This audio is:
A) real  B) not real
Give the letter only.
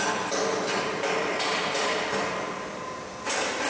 A